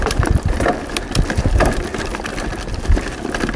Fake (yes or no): no